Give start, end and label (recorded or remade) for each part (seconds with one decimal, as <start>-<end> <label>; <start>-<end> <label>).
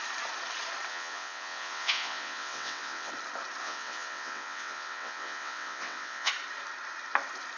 0.0-0.9 recorded; 0.9-3.1 remade; 3.1-3.6 recorded; 3.6-6.3 remade; 6.3-7.6 recorded